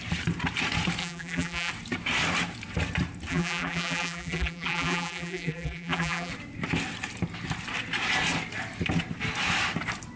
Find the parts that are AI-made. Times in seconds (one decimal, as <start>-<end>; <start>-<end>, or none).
1.0-1.7; 3.3-6.3